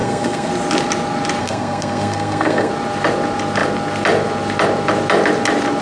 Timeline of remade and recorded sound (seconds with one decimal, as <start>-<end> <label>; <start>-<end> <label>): 0.0-0.5 remade; 0.5-1.4 recorded; 1.4-2.7 remade; 2.7-5.8 recorded